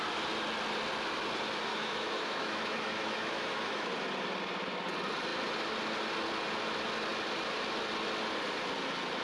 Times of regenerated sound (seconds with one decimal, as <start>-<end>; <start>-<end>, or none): 1.7-3.9